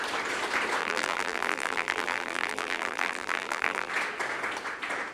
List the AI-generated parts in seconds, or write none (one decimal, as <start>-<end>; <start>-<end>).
0.8-3.9